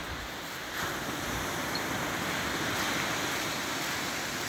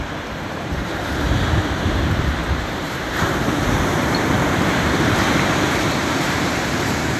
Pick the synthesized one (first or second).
second